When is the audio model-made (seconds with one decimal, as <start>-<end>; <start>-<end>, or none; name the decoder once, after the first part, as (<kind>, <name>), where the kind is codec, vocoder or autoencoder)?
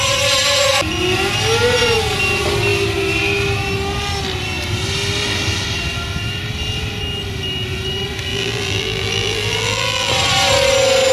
8.3-10.1 (vocoder, BigVGAN v2)